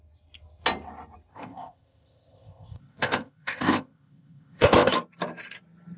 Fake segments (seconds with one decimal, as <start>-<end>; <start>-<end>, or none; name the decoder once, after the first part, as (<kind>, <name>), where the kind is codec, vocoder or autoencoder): 1.3-4.9 (codec, ZipCodec)